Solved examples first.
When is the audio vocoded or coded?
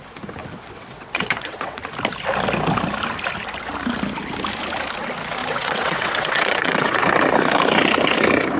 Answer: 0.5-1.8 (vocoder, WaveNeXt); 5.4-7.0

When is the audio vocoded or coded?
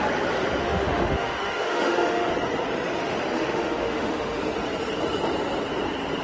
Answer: 0.6-2.3 (autoencoder, DAC-VAE); 3.0-4.4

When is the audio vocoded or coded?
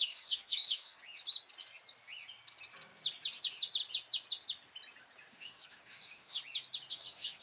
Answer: 0.0-1.0 (autoencoder, DAC-VAE); 5.3-6.4; 6.9-7.4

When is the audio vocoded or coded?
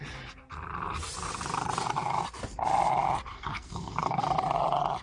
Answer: 3.3-4.2 (codec, SNAC)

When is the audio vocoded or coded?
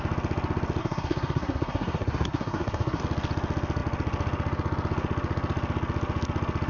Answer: 0.8-3.0 (codec, SNAC)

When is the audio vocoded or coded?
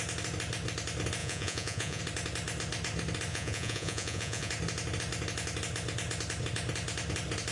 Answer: 1.2-2.0 (vocoder, Vocos); 3.3-4.5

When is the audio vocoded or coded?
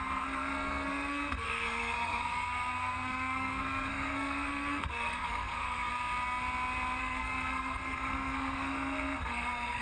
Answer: 0.0-5.9 (codec, SNAC); 7.0-9.8